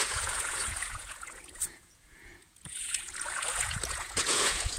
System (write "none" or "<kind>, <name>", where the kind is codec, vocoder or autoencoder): vocoder, Vocos